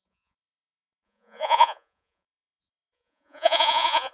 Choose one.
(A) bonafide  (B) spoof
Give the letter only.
B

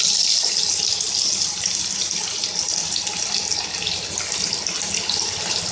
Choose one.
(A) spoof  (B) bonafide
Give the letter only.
B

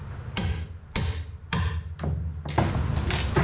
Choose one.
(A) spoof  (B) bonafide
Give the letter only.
B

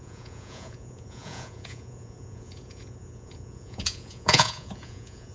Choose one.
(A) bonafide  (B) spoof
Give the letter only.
B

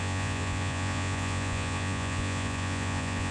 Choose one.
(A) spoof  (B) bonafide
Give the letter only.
A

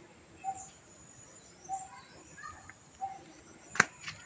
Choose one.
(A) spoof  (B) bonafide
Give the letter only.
B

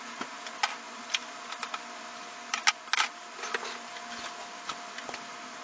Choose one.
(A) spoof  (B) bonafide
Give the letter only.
B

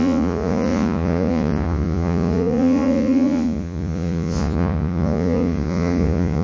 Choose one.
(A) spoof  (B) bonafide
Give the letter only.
A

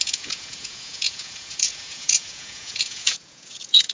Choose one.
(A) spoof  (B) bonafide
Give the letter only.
A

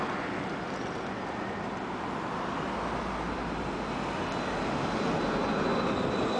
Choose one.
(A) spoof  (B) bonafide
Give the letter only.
B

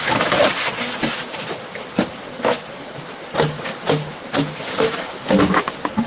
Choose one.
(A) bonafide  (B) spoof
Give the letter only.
A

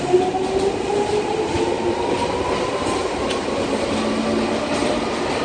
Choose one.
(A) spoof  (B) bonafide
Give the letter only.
B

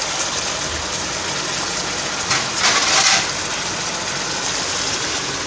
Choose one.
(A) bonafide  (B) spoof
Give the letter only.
A